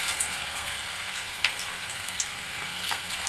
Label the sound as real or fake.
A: fake